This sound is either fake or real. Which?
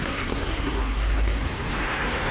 fake